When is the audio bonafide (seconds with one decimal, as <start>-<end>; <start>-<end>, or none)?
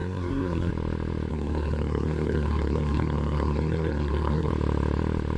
0.7-1.3; 4.5-5.4